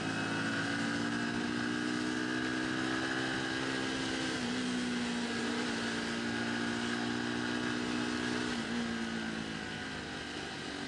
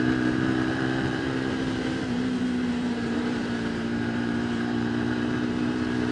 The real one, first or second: first